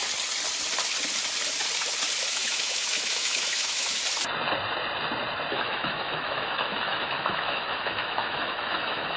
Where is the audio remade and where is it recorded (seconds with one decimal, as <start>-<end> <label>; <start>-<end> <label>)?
0.0-2.3 recorded; 2.3-4.0 remade; 4.0-5.5 recorded; 5.5-9.2 remade